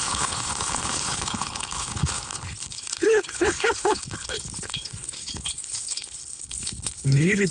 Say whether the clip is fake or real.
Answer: fake